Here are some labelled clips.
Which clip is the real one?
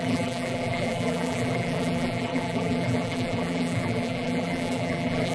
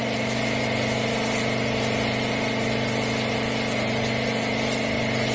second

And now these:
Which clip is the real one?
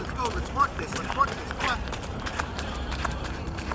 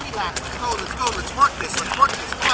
second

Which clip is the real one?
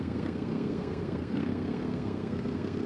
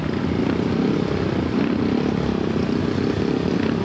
second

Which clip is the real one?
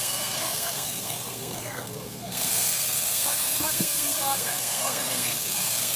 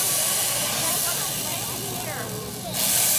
second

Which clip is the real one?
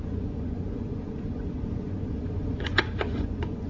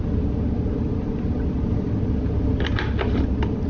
second